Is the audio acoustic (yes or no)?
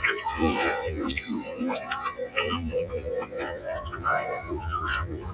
no